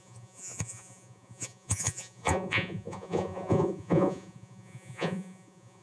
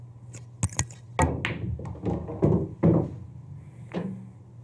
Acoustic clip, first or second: second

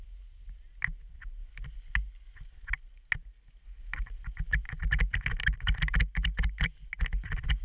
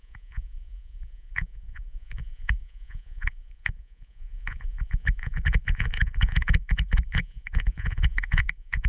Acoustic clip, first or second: first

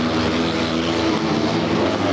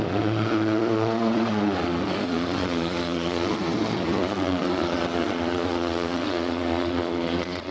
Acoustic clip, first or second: first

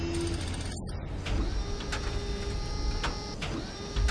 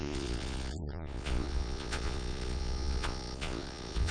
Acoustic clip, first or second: first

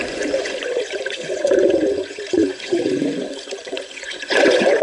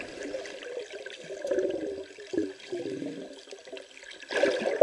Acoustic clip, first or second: second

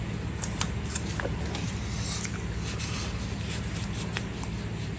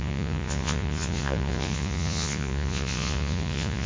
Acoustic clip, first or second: first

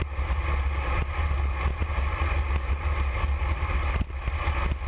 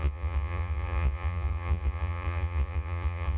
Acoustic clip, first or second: first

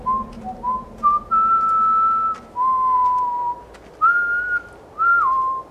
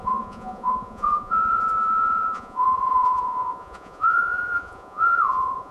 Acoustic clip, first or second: first